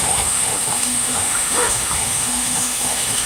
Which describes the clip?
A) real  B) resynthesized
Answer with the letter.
B